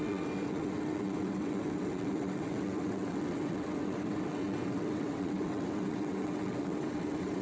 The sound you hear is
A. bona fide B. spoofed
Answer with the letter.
B